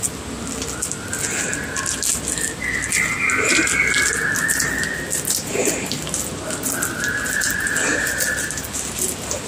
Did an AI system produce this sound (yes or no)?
no